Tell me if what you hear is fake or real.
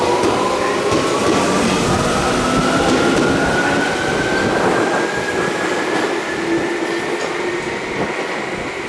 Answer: real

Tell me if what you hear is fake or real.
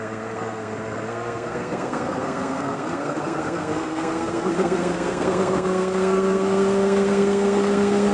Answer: fake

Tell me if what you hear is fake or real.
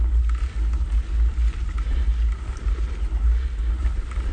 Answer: real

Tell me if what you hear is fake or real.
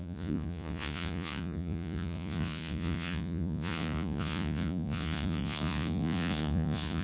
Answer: fake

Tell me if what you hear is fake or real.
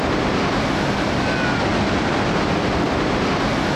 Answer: real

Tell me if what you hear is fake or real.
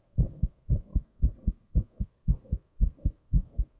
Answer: fake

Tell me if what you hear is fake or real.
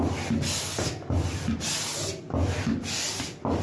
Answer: real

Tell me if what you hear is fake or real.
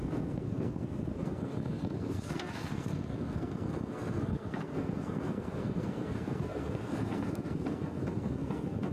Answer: fake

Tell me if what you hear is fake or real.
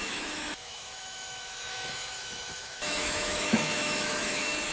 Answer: fake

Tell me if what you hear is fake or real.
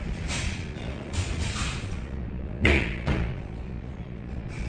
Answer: fake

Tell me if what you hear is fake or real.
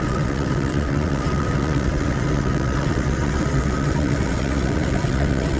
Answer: fake